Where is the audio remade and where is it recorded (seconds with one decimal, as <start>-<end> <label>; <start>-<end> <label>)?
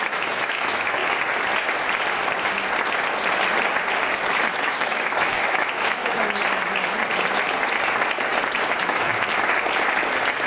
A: 0.0-1.0 remade; 1.0-4.3 recorded; 4.3-6.0 remade; 6.0-8.6 recorded; 8.6-9.1 remade; 9.1-10.5 recorded